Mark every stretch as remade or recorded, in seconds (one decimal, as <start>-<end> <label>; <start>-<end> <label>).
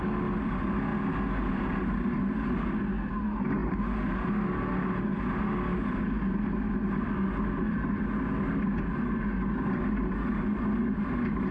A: 0.0-11.5 recorded